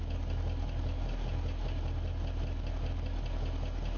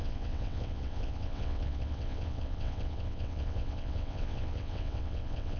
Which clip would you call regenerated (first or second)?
second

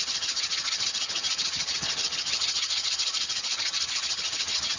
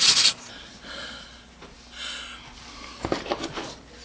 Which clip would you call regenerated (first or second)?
first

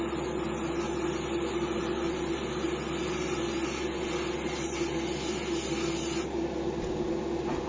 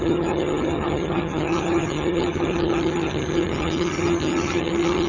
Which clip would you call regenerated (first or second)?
second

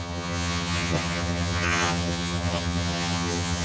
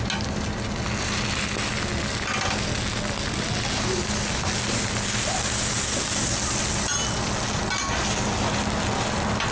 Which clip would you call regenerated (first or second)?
first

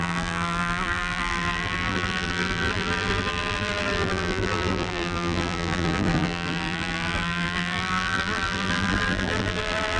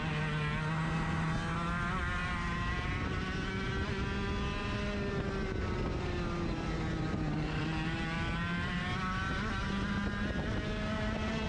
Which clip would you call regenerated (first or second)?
first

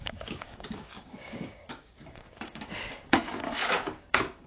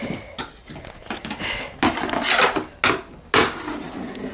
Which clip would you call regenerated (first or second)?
first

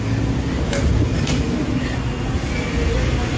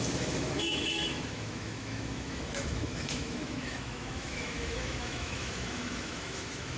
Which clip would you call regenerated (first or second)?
second